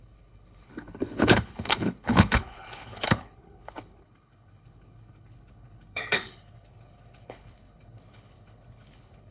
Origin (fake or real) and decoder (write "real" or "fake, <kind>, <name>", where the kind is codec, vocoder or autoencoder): fake, codec, HILCodec